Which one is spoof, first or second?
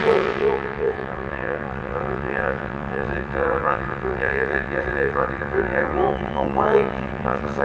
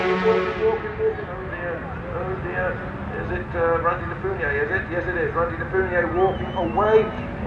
first